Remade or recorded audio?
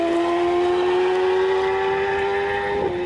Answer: recorded